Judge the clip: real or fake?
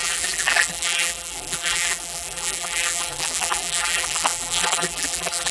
fake